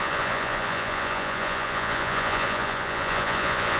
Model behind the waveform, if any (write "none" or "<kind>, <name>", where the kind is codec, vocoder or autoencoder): vocoder, Vocos